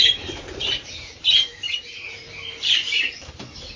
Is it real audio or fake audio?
fake